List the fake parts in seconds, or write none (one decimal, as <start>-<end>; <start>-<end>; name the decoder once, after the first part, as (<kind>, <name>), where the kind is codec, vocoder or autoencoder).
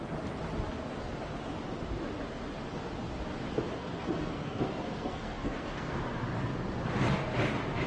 3.8-6.0 (codec, SNAC)